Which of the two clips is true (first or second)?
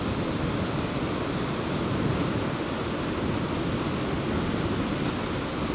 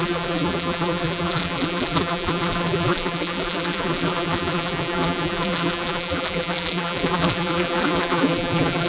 first